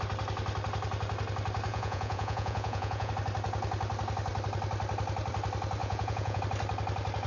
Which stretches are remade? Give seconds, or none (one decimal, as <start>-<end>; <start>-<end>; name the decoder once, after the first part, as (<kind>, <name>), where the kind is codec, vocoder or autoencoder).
1.7-3.1 (vocoder, Vocos); 5.8-6.4

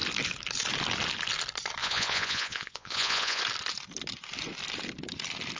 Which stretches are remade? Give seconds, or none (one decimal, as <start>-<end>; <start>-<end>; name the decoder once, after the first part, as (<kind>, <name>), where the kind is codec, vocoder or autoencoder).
1.8-3.4 (vocoder, Vocos)

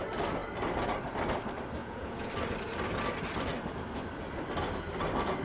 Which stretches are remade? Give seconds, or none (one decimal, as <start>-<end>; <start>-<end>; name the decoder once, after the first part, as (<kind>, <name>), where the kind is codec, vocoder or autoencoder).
1.8-2.3 (vocoder, Vocos)

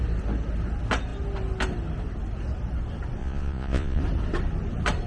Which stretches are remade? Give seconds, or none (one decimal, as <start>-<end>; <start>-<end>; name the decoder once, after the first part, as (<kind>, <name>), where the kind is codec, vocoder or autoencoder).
3.2-4.0 (vocoder, Vocos)

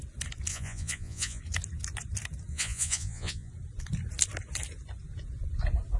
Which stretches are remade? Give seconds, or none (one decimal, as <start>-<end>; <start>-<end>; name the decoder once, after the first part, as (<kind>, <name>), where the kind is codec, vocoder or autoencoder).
0.5-1.4 (vocoder, Vocos); 2.5-3.5

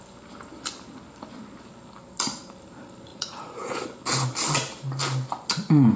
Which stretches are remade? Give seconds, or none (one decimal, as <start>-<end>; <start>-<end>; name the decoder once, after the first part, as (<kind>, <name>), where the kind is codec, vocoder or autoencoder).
3.1-3.8 (vocoder, Vocos)

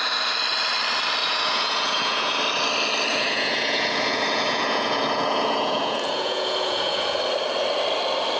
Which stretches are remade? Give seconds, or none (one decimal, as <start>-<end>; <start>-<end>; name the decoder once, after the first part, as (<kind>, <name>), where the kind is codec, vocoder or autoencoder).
1.2-2.4 (vocoder, Vocos); 3.1-7.2

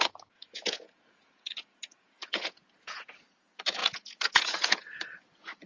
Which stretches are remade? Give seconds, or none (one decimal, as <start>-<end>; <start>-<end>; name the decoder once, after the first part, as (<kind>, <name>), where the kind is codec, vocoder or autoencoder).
0.0-5.7 (vocoder, Vocos)